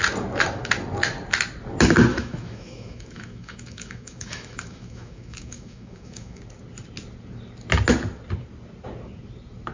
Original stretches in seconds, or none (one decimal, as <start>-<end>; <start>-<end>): 0.0-2.1; 6.4-9.7